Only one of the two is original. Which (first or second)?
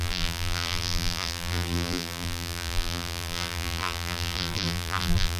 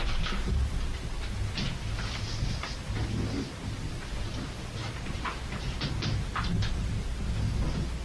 second